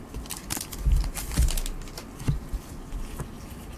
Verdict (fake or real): real